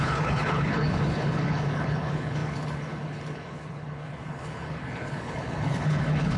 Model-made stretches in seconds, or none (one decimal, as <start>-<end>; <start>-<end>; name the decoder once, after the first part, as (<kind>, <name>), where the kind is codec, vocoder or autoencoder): 0.0-6.4 (codec, HILCodec)